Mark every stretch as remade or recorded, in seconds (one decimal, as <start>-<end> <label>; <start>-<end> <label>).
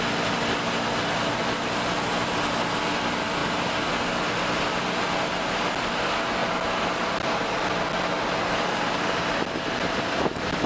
0.0-10.7 recorded